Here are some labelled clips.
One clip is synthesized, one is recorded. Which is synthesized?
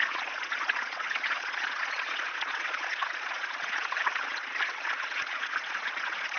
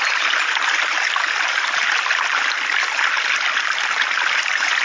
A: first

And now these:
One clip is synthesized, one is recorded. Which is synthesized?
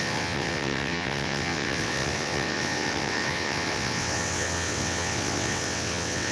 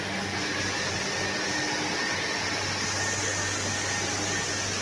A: first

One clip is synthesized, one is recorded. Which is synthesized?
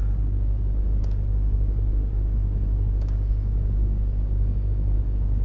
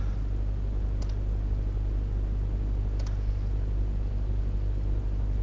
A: first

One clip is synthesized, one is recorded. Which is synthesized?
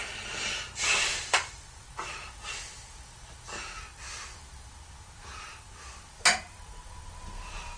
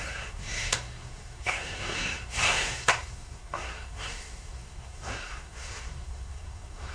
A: second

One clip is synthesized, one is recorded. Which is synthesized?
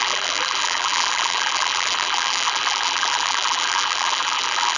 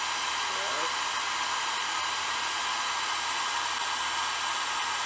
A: first